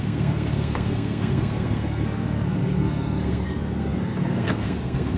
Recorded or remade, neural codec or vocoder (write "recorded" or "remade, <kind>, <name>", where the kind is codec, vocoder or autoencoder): remade, codec, SNAC